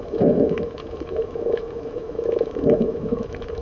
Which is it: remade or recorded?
remade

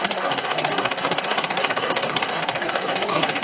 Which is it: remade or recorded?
remade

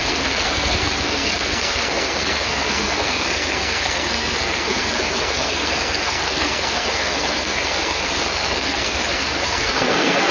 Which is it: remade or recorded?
remade